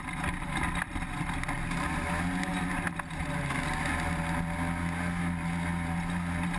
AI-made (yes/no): no